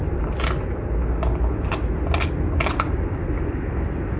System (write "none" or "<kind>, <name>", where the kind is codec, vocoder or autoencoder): none